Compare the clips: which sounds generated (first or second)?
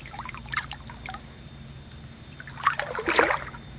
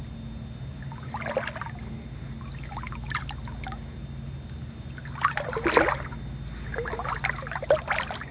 first